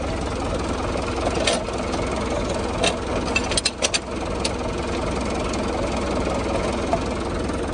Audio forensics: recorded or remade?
recorded